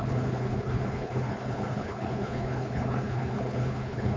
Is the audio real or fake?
fake